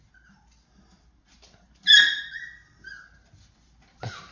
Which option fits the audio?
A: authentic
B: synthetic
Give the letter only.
A